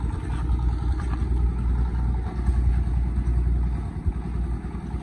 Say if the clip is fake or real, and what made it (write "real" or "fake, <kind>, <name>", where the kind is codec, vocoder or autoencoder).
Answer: real